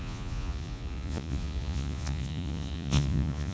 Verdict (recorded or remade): remade